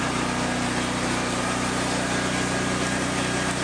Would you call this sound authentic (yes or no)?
yes